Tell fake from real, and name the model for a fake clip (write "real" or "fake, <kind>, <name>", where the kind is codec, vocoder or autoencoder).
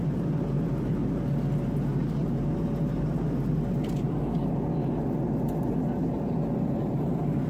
real